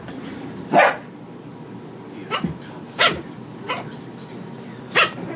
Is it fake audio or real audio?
real